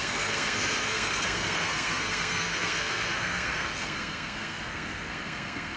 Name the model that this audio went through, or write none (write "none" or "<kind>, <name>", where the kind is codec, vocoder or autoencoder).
codec, SNAC